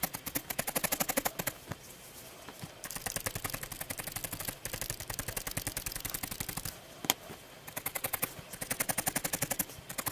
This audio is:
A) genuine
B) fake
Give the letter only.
A